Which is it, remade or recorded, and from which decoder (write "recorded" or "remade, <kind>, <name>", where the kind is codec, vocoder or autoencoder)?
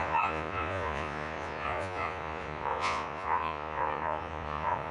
remade, vocoder, Vocos